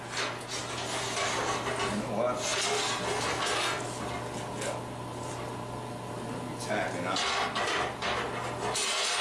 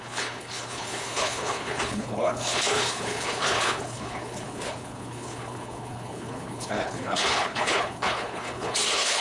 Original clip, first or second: first